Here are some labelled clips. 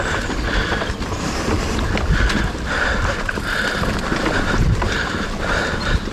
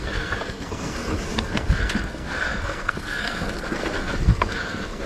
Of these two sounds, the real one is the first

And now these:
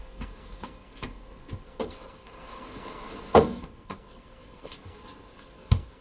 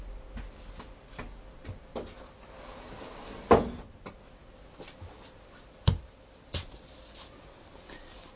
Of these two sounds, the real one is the second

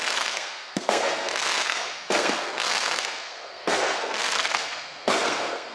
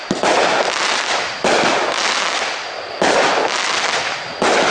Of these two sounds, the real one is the second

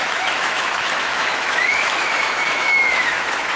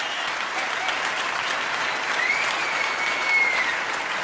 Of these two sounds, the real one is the second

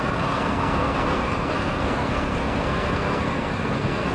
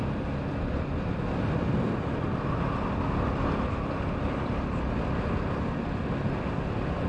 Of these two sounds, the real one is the second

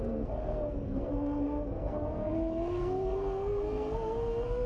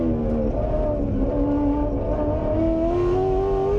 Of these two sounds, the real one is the second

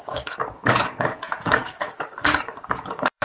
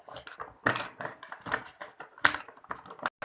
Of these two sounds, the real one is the second